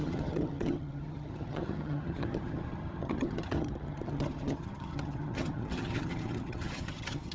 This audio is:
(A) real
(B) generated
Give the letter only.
B